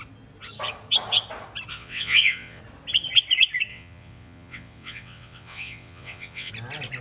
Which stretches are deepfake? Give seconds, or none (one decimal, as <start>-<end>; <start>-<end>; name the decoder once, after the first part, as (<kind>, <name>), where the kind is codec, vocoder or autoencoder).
1.7-2.6 (vocoder, WaveNeXt); 3.7-6.5